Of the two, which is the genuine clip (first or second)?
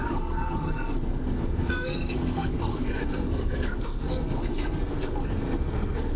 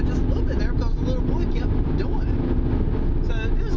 second